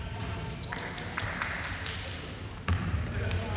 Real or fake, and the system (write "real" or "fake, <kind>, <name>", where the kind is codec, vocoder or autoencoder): real